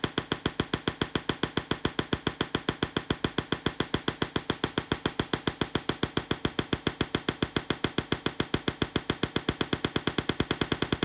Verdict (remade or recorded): recorded